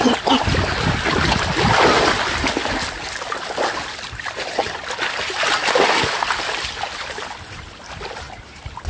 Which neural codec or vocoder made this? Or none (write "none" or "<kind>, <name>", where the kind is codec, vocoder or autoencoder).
none